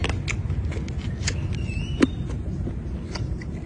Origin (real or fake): real